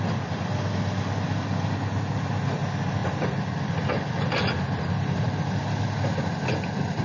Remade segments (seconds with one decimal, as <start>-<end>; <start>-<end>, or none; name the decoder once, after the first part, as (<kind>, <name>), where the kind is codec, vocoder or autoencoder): 3.0-5.2 (vocoder, BigVGAN v2)